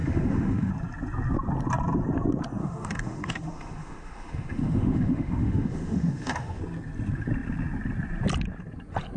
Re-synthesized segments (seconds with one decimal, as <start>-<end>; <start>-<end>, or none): 0.0-0.7; 2.6-6.6